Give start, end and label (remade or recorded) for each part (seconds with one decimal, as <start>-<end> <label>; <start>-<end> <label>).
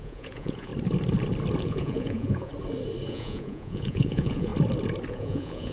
0.0-0.7 remade; 0.7-1.6 recorded; 1.6-2.5 remade; 2.5-3.1 recorded; 3.1-4.5 remade; 4.5-5.1 recorded; 5.1-5.7 remade